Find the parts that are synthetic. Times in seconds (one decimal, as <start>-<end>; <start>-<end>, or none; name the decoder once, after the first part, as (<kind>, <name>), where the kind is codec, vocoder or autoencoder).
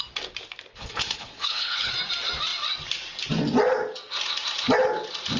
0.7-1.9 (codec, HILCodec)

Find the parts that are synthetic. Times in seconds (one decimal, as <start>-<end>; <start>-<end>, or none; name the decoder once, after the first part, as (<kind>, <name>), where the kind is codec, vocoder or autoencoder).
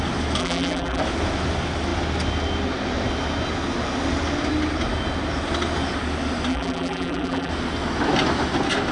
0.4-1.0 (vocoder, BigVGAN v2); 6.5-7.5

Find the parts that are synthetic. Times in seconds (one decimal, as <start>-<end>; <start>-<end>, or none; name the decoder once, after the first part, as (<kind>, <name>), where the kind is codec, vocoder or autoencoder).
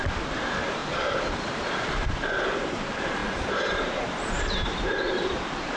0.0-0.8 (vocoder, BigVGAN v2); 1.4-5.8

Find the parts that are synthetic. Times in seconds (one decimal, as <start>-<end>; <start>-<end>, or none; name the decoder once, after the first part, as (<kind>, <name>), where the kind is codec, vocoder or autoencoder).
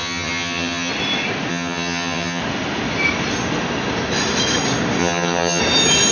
0.0-0.9 (vocoder, HiFi-GAN); 1.5-2.4; 5.0-5.6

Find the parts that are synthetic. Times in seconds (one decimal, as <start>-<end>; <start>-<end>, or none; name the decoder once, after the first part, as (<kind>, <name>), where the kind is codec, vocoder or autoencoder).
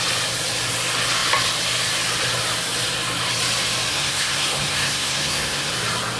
3.9-5.7 (codec, SNAC)